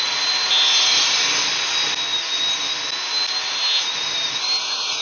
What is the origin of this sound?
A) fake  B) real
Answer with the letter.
B